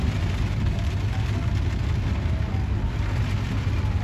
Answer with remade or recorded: recorded